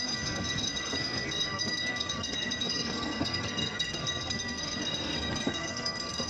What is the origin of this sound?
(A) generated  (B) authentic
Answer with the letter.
A